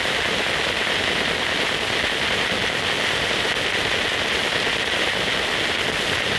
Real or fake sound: real